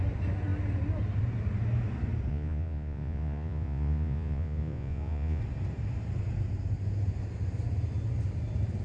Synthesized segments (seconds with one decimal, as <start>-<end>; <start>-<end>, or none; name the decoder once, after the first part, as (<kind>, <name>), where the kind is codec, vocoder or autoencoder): 2.3-5.4 (vocoder, Vocos)